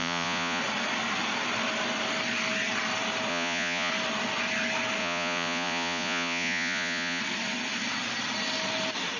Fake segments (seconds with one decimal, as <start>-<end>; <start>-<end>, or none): 0.0-0.6; 3.3-3.9; 5.0-7.2